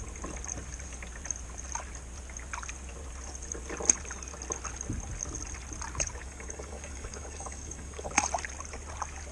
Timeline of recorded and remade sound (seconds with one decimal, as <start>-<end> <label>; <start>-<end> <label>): 0.0-6.2 recorded; 6.2-8.1 remade; 8.1-9.3 recorded